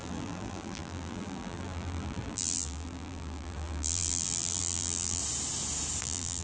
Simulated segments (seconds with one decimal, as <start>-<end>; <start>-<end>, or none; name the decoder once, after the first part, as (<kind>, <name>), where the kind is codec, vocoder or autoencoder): 0.0-5.2 (vocoder, BigVGAN v2); 6.0-6.4